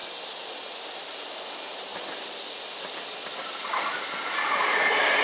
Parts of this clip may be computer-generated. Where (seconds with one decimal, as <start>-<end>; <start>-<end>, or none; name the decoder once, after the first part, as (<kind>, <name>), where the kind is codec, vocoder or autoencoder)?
0.9-5.2 (vocoder, BigVGAN v2)